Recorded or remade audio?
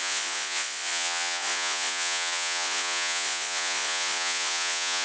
remade